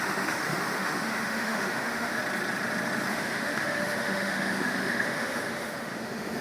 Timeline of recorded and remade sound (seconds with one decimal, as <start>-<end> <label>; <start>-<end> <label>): 0.0-2.2 remade; 2.2-3.1 recorded; 3.1-6.4 remade